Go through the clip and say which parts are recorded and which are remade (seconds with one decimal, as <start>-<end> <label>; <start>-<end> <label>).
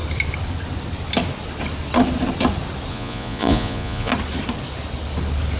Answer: 0.0-2.9 recorded; 2.9-4.1 remade; 4.1-5.6 recorded